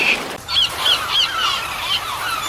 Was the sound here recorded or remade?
remade